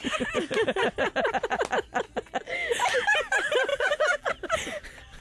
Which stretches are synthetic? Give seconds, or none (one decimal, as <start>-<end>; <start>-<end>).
3.7-4.3